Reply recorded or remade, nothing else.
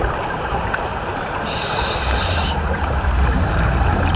recorded